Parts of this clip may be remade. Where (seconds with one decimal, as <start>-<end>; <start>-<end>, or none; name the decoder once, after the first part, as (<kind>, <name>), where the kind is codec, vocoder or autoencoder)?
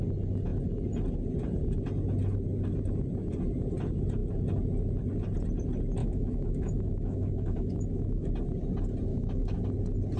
6.0-8.3 (autoencoder, DAC-VAE); 9.1-9.6